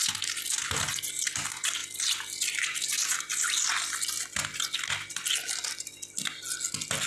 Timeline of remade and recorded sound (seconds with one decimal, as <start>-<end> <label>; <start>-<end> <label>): 0.0-7.1 recorded